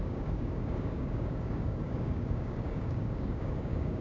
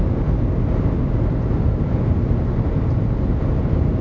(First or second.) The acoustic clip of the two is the second